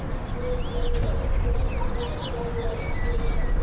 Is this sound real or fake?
real